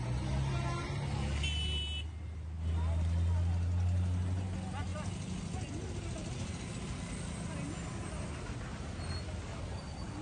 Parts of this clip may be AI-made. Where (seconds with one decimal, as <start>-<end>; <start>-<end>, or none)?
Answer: none